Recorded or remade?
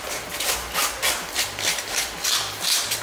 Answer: remade